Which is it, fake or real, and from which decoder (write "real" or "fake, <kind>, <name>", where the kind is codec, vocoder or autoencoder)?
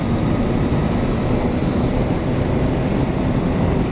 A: real